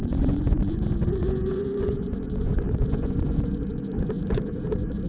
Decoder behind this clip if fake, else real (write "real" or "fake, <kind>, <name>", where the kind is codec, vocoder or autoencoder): fake, vocoder, Vocos